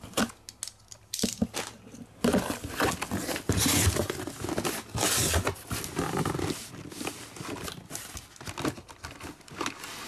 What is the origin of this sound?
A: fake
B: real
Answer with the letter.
B